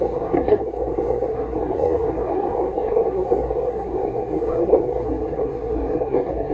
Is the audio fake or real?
fake